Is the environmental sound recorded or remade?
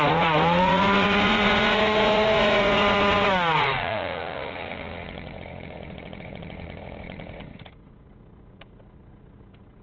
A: remade